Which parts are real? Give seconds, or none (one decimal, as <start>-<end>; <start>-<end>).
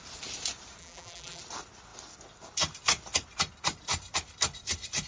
0.0-0.8; 1.4-5.1